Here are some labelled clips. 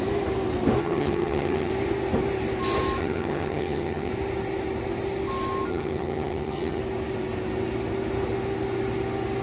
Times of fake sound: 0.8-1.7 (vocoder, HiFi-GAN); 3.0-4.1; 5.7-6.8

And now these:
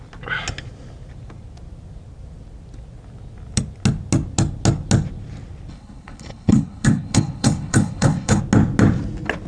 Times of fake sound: 5.7-8.4 (codec, HILCodec)

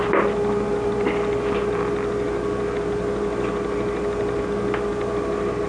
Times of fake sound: none